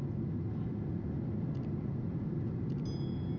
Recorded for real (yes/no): yes